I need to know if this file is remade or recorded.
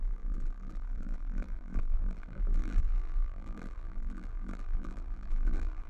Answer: remade